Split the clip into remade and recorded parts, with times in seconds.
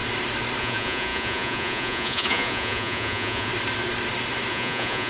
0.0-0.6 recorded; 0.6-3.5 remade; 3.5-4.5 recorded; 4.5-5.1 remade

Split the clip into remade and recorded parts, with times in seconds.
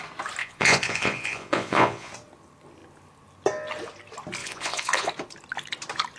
0.0-0.4 recorded; 0.4-2.1 remade; 2.1-4.4 recorded; 4.4-5.1 remade; 5.1-6.2 recorded